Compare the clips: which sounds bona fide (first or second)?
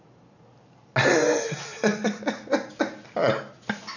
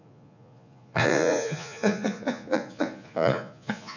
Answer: first